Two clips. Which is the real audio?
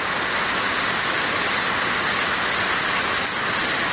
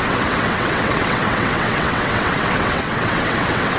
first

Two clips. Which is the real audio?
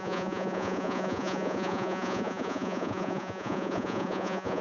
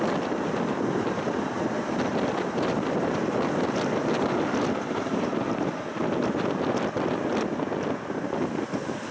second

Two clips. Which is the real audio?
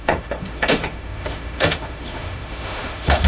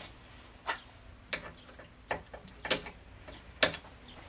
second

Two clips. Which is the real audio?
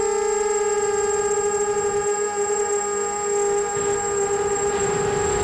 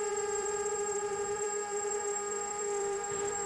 first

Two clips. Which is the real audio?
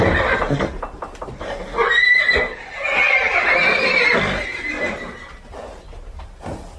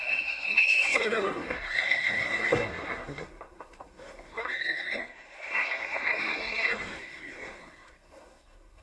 first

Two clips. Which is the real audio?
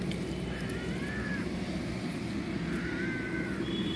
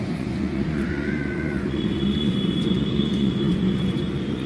first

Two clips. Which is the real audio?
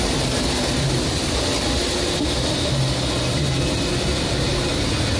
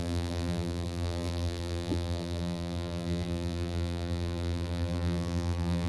first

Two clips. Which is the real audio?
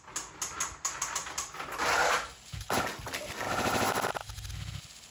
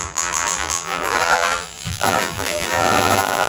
first